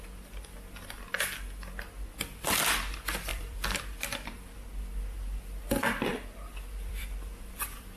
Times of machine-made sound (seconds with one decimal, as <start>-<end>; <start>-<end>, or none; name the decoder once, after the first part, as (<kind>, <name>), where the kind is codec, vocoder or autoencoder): 3.3-3.8 (vocoder, BigVGAN v2); 6.1-7.5